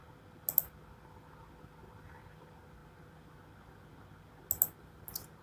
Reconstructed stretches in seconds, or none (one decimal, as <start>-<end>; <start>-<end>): none